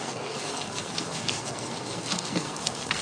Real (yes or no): no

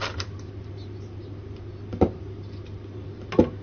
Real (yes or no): yes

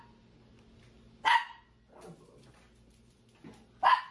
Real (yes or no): yes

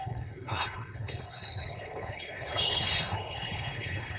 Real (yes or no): no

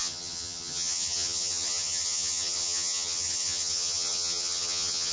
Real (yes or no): no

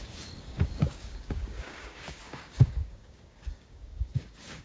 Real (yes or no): no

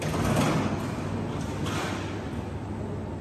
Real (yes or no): yes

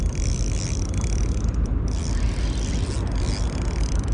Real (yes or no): yes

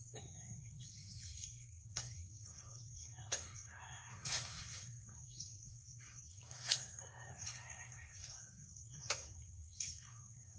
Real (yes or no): no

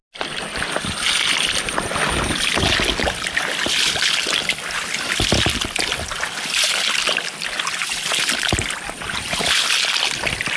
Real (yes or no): yes